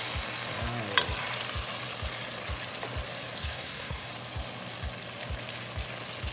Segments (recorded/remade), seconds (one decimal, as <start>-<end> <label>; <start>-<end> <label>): 0.0-3.4 recorded; 3.4-4.1 remade; 4.1-6.3 recorded